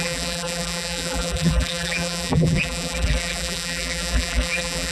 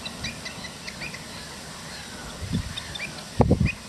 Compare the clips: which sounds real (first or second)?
second